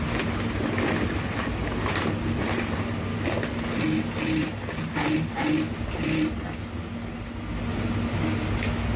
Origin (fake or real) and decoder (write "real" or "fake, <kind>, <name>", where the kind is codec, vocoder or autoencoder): real